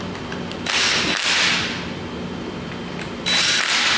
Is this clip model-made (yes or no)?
no